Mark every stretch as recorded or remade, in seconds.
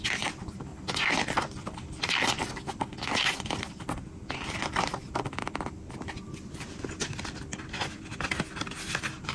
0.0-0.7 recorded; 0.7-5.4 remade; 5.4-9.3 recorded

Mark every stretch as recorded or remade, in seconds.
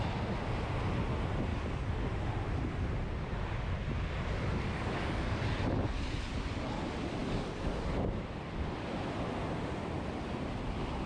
0.0-1.5 recorded; 1.5-2.1 remade; 2.1-4.7 recorded; 4.7-5.4 remade; 5.4-7.2 recorded; 7.2-7.8 remade; 7.8-11.1 recorded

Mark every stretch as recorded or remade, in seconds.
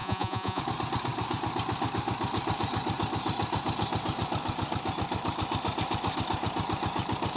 0.0-0.6 remade; 0.6-7.4 recorded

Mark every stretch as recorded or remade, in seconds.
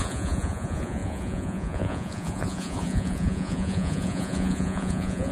0.0-5.3 remade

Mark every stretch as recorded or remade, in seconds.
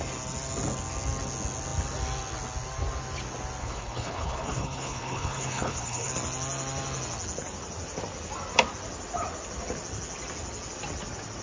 0.0-3.6 recorded; 3.6-6.1 remade; 6.1-11.4 recorded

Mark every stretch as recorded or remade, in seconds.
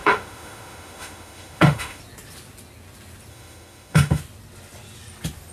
0.0-2.0 remade; 2.0-3.3 recorded; 3.3-4.2 remade; 4.2-5.5 recorded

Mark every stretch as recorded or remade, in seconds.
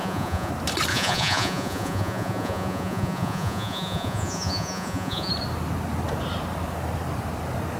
0.0-0.5 remade; 0.5-0.9 recorded; 0.9-5.3 remade; 5.3-7.8 recorded